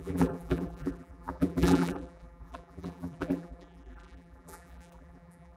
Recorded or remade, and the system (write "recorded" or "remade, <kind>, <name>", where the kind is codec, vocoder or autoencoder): remade, vocoder, BigVGAN v2